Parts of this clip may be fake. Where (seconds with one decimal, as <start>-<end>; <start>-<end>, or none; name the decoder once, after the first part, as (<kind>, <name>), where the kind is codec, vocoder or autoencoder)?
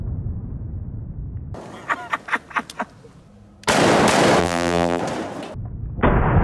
4.4-5.0 (vocoder, BigVGAN v2)